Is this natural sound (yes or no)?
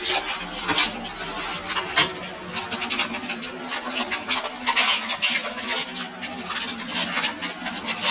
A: yes